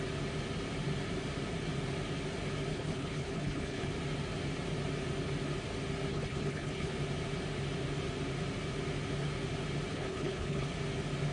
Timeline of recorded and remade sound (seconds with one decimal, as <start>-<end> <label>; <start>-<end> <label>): 0.0-2.7 recorded; 2.7-3.9 remade; 3.9-6.1 recorded; 6.1-6.9 remade; 6.9-9.9 recorded; 9.9-10.7 remade; 10.7-11.3 recorded

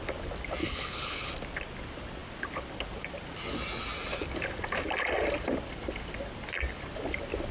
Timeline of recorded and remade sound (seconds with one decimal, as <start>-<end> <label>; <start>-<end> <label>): 0.0-0.6 recorded; 0.6-1.3 remade; 1.3-7.5 recorded

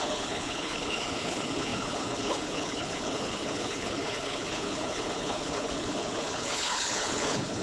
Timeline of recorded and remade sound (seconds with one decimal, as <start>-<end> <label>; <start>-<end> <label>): 0.0-7.6 remade

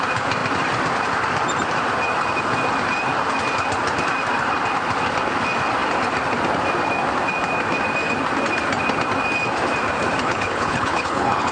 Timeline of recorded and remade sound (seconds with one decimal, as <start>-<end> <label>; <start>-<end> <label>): 0.0-10.2 recorded; 10.2-11.5 remade

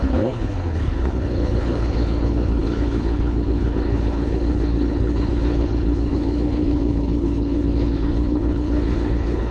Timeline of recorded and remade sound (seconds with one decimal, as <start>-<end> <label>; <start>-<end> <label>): 0.0-9.5 remade

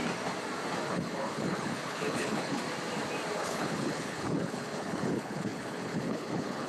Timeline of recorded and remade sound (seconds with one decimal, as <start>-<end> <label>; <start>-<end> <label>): 0.0-0.9 recorded; 0.9-2.6 remade; 2.6-3.4 recorded; 3.4-6.7 remade

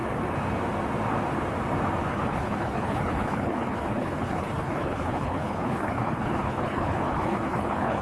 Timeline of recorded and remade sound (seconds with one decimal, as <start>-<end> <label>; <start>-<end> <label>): 0.0-2.1 recorded; 2.1-8.0 remade

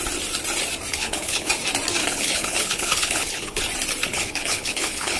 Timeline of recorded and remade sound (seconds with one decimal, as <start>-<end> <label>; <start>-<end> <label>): 0.0-0.9 recorded; 0.9-1.5 remade; 1.5-2.0 recorded; 2.0-3.6 remade; 3.6-4.1 recorded; 4.1-5.2 remade